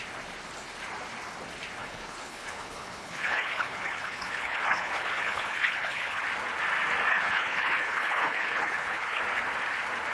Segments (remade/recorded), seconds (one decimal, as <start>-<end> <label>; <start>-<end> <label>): 0.0-1.8 recorded; 1.8-6.2 remade; 6.2-7.1 recorded; 7.1-9.2 remade; 9.2-10.1 recorded

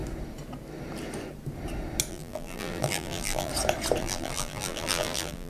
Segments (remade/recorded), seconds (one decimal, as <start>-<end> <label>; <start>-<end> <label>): 0.0-2.1 recorded; 2.1-3.5 remade; 3.5-4.0 recorded; 4.0-5.5 remade

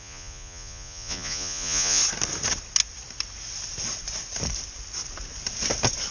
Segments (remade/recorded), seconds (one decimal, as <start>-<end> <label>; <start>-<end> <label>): 0.0-2.0 remade; 2.0-6.1 recorded

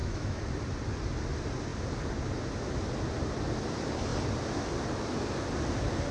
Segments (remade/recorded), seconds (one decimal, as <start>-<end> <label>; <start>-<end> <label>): 0.0-0.5 remade; 0.5-6.1 recorded

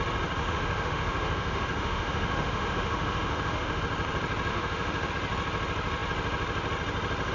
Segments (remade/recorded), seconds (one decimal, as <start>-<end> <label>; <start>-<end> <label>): 0.0-0.4 recorded; 0.4-3.8 remade; 3.8-4.5 recorded; 4.5-5.1 remade; 5.1-7.3 recorded

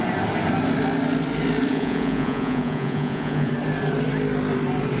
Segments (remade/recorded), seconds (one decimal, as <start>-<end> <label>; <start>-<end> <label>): 0.0-1.7 recorded; 1.7-3.5 remade; 3.5-5.0 recorded